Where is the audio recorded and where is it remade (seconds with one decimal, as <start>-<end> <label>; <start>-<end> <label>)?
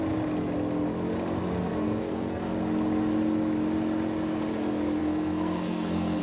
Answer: 0.0-1.6 recorded; 1.6-2.4 remade; 2.4-5.0 recorded; 5.0-6.2 remade